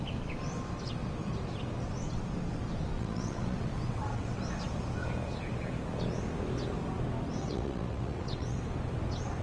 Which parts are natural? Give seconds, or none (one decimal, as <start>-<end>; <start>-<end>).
0.0-2.9; 4.4-7.4; 8.6-9.4